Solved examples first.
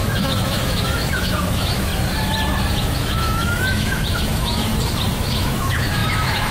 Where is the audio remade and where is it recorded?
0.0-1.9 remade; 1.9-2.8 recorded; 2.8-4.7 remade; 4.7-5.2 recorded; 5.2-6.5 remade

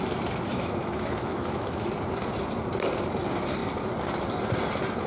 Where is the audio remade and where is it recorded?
0.0-0.5 recorded; 0.5-1.9 remade; 1.9-5.1 recorded

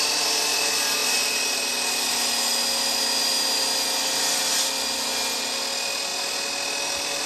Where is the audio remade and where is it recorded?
0.0-7.3 recorded